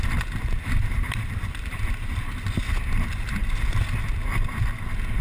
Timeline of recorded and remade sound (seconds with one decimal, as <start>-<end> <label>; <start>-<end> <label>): 0.0-0.8 recorded; 0.8-2.6 remade; 2.6-5.2 recorded